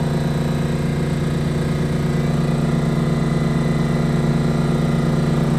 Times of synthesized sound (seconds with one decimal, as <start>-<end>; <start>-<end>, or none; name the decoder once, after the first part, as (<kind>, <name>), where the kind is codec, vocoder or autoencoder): none